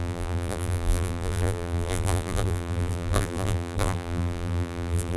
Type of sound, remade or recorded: remade